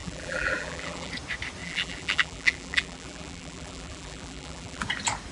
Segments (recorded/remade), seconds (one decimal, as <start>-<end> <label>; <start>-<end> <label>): 0.0-1.1 remade; 1.1-1.6 recorded; 1.6-4.8 remade; 4.8-5.3 recorded